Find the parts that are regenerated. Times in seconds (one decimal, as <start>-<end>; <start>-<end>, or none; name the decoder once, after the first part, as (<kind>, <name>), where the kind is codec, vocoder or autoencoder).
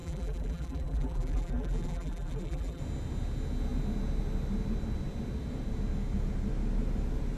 0.0-2.8 (vocoder, BigVGAN v2)